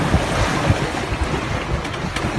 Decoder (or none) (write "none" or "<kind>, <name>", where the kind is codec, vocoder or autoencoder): none